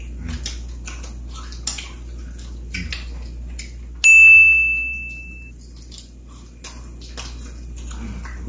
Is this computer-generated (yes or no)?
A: no